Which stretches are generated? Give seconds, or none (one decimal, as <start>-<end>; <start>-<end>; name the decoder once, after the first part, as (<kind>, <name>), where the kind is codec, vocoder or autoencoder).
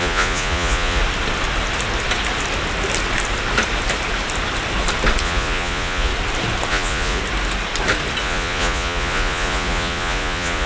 0.0-1.0 (vocoder, Vocos); 5.2-6.1; 6.7-7.2; 8.2-10.7